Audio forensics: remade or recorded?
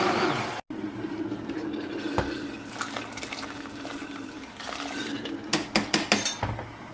recorded